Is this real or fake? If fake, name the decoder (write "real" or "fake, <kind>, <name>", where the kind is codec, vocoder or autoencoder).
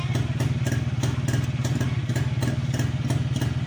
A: real